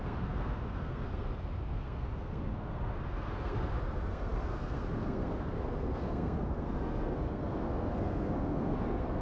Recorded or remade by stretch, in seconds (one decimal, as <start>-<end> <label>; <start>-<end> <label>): 0.0-9.2 remade